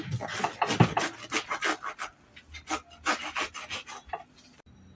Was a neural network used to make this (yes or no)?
no